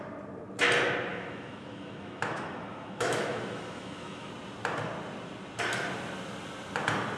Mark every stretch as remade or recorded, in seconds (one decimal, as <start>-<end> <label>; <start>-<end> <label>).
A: 0.0-1.1 recorded; 1.1-4.3 remade; 4.3-7.2 recorded